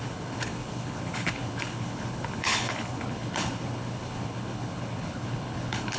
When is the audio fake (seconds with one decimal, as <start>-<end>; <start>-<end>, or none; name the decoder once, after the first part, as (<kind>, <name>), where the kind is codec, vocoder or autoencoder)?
0.0-6.0 (codec, HILCodec)